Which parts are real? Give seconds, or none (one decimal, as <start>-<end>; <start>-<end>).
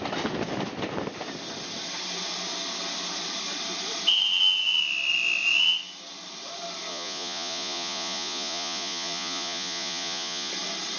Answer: 0.0-6.9; 10.5-11.0